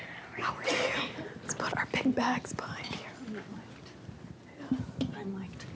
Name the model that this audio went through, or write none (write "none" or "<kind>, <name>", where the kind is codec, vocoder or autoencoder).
none